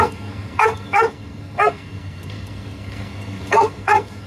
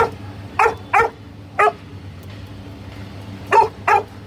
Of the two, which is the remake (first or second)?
first